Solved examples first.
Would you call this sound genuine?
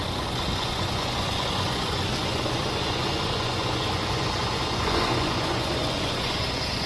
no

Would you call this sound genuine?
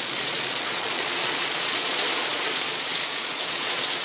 no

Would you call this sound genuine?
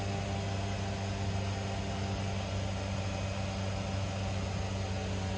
yes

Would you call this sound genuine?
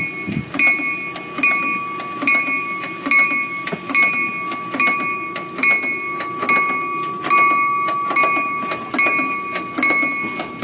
yes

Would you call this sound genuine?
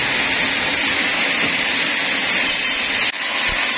yes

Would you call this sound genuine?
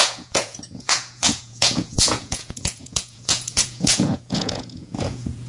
no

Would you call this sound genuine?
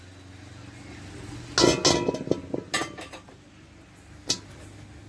yes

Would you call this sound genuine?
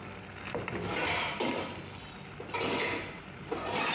yes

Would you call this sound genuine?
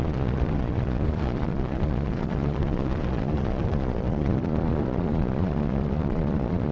no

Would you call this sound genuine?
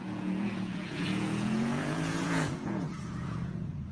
no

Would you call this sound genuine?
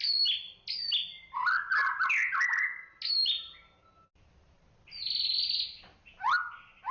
yes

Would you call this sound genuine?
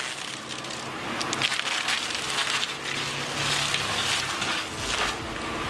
yes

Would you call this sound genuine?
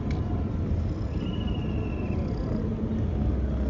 yes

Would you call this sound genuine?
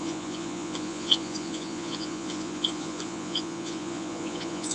no